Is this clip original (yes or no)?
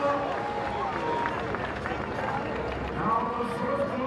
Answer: yes